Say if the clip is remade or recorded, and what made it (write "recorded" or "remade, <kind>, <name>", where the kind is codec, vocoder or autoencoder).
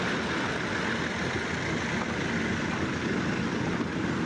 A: recorded